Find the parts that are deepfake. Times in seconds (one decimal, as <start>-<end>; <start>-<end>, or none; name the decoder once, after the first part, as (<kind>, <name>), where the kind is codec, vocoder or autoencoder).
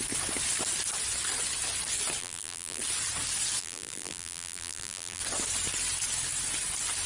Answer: 2.2-2.8 (vocoder, BigVGAN v2); 3.6-5.2